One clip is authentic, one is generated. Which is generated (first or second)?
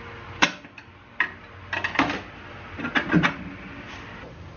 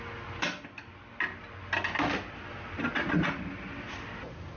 first